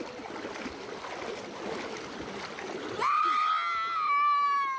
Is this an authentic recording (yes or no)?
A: yes